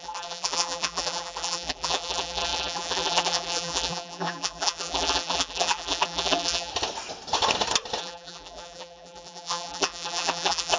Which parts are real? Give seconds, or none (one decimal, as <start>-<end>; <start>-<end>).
6.7-8.0